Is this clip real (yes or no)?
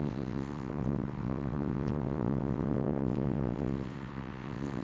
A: no